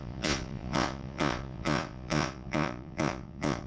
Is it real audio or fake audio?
fake